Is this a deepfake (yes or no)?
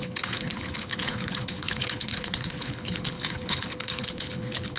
yes